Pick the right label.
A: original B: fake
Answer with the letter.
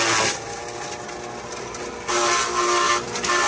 A